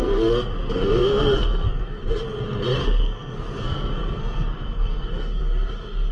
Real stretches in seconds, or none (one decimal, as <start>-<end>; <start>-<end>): 2.0-2.8; 5.4-6.1